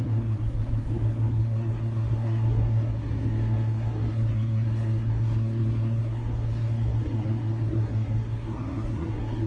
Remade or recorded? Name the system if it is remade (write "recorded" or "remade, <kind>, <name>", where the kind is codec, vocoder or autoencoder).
remade, codec, SNAC